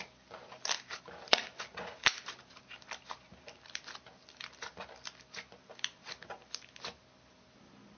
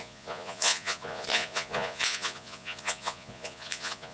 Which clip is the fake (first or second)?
second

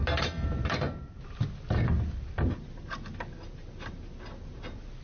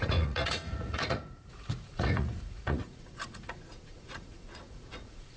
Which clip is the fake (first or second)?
second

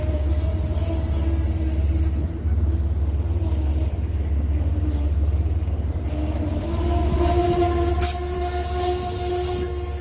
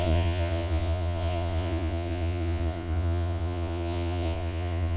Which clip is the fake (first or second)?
second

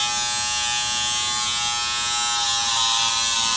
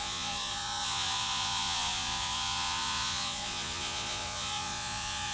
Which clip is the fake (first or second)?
second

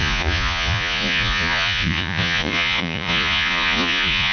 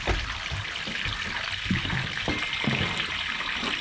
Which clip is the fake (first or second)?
first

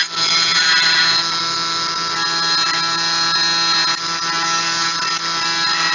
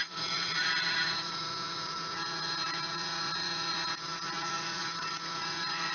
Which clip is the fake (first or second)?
second